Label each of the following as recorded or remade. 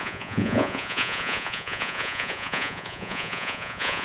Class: remade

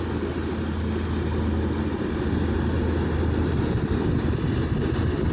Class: recorded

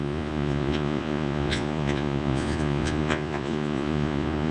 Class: remade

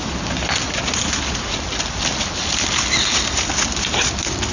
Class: recorded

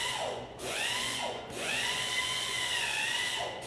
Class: remade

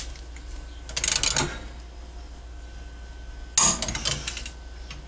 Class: recorded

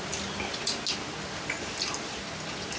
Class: recorded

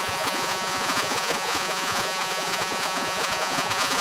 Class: remade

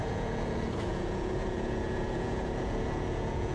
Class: remade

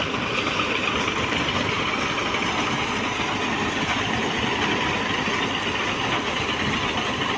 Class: recorded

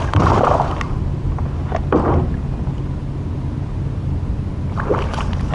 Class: recorded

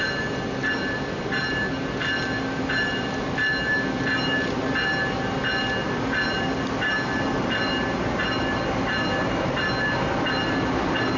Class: recorded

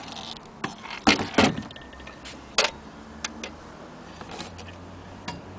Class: recorded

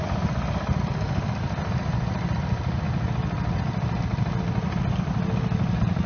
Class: recorded